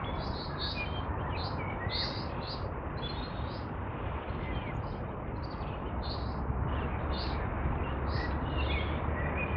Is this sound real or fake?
real